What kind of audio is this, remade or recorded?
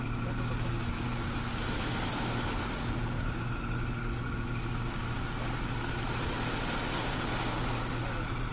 recorded